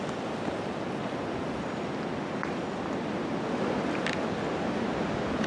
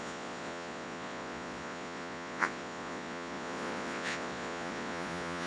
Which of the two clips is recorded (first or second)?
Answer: first